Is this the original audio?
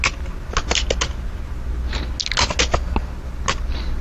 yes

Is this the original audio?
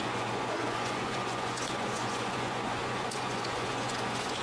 no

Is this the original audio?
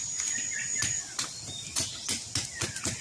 yes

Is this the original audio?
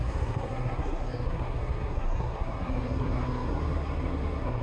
no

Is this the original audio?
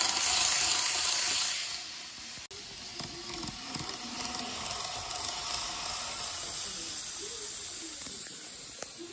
yes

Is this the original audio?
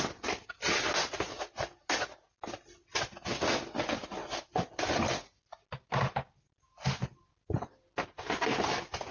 yes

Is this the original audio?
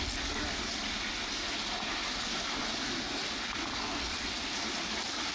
yes